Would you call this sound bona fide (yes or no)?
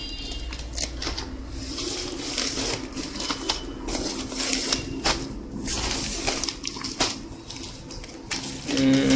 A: yes